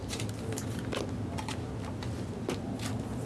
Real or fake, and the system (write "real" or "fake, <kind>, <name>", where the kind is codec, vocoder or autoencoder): real